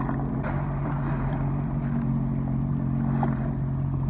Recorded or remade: recorded